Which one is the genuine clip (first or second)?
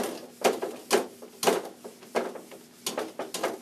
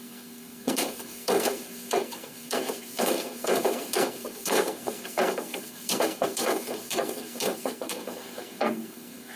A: first